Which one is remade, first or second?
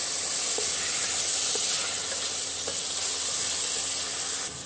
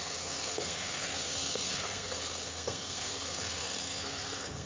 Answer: second